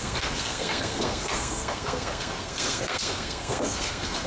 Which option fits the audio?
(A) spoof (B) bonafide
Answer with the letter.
A